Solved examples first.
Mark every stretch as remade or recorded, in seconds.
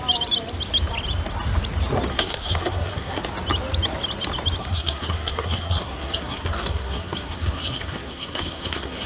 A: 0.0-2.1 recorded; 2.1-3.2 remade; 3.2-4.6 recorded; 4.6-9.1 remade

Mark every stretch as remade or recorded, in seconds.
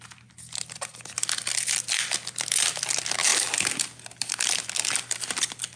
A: 0.0-5.8 recorded